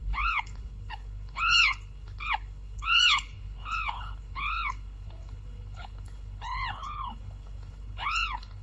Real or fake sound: fake